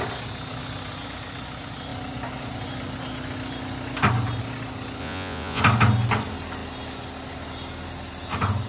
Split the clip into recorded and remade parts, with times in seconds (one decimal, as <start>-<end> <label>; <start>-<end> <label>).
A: 0.0-5.0 recorded; 5.0-5.6 remade; 5.6-8.7 recorded